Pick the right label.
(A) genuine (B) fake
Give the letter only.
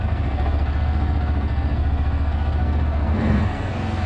B